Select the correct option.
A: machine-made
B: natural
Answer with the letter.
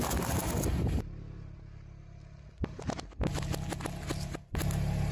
B